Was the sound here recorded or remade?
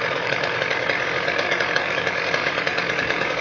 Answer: remade